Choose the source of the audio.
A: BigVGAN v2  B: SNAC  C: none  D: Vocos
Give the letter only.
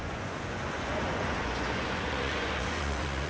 D